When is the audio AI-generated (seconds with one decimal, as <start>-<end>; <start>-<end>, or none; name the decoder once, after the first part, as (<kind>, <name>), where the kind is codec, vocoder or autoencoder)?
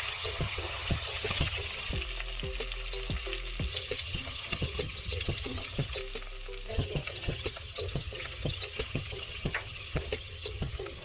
0.0-1.9 (vocoder, HiFi-GAN); 3.7-6.0; 6.7-11.0